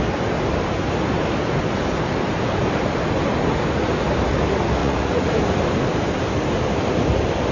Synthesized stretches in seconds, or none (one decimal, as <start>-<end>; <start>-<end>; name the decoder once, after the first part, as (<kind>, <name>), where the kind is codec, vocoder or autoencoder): 4.8-5.3 (vocoder, Vocos)